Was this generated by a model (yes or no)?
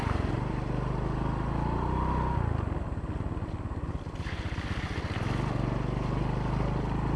no